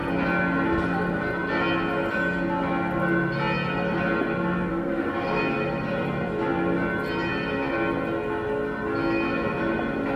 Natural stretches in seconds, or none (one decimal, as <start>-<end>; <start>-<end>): 0.0-4.7; 5.4-10.2